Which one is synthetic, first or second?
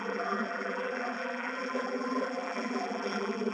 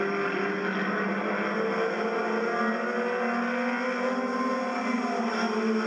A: first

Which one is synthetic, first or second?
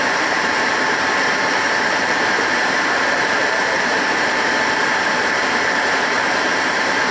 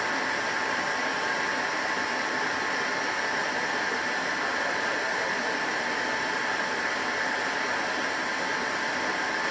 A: first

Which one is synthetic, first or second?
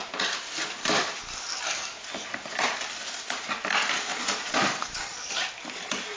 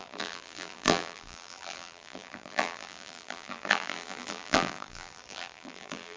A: second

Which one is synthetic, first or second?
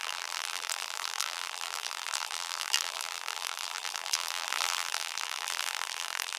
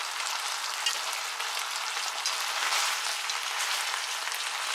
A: first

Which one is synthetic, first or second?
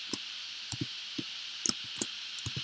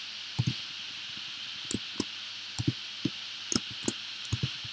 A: first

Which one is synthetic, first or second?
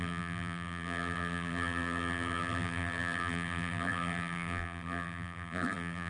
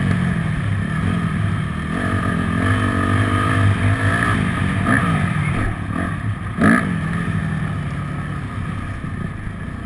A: first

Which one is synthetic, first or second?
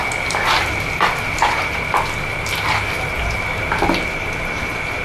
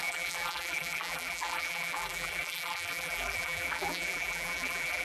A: second